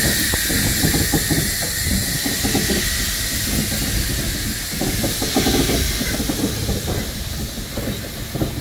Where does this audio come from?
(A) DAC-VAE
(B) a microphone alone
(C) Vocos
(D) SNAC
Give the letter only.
B